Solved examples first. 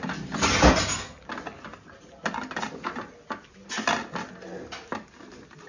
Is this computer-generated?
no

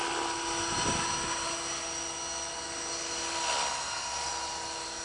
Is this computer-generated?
no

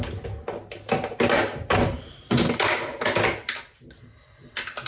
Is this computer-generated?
no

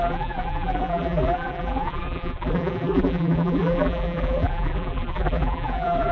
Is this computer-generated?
yes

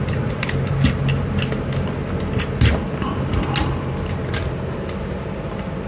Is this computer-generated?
no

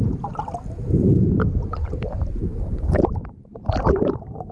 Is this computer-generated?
yes